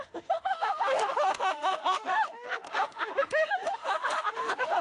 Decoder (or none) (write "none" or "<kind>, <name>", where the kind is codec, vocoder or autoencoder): autoencoder, DAC-VAE